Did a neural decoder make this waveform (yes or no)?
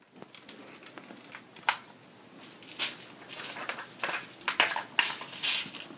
no